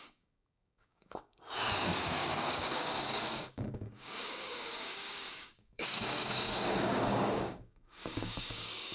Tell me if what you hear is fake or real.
fake